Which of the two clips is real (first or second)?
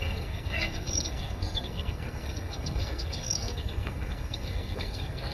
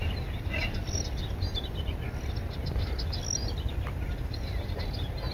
second